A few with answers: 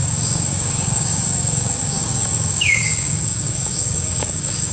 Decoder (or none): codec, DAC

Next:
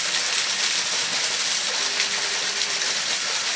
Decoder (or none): none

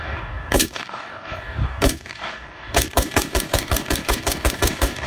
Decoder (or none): codec, DAC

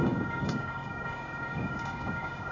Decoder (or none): codec, DAC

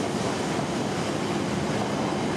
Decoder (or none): none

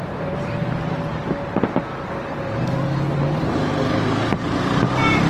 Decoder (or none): none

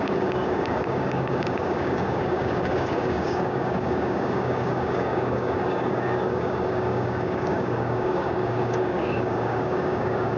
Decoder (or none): codec, DAC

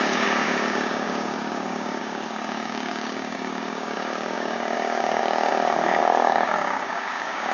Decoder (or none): codec, DAC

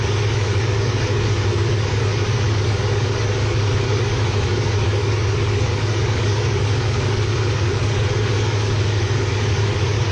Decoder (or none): codec, DAC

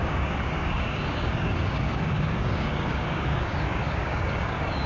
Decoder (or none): codec, DAC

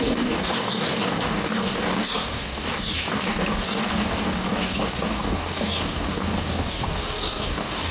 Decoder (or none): codec, DAC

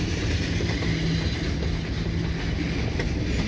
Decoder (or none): none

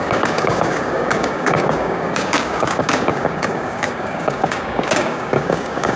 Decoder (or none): codec, DAC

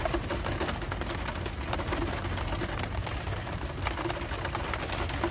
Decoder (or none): none